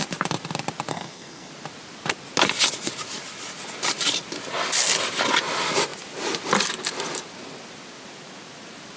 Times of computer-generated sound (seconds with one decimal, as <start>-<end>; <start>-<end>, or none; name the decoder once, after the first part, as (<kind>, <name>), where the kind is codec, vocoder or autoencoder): 0.9-1.5 (codec, SNAC)